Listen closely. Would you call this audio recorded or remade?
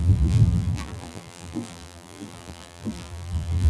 remade